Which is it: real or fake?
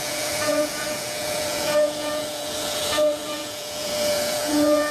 fake